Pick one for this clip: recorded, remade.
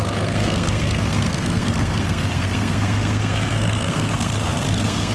remade